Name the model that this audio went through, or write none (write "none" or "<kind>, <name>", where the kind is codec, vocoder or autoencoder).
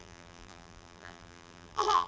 vocoder, BigVGAN v2